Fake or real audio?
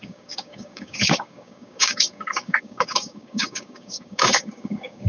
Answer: fake